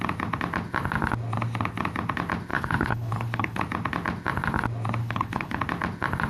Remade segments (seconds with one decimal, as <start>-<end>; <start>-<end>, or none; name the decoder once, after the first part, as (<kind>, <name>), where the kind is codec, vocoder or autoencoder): 2.5-3.6 (codec, HILCodec); 5.0-5.6